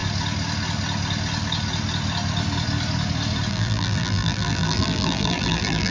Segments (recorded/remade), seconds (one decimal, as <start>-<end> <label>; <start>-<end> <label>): 0.0-3.5 recorded; 3.5-5.9 remade